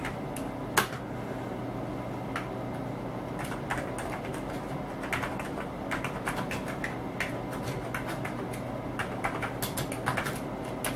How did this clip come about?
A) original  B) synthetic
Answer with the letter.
A